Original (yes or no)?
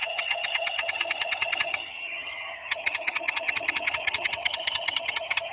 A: no